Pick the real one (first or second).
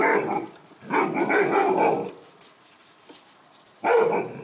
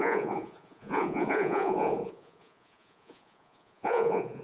first